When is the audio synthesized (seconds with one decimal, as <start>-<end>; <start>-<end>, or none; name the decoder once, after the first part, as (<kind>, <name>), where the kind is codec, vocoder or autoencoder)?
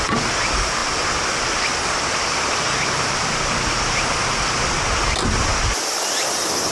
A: none